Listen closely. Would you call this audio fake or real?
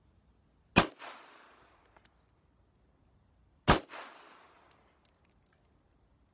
real